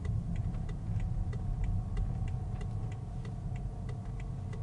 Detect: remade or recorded recorded